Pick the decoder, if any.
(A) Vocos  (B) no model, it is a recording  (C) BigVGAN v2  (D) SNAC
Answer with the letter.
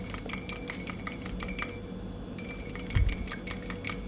B